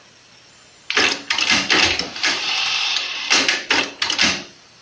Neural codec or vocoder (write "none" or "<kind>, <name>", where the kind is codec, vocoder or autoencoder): none